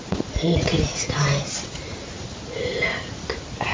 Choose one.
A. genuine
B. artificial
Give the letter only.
A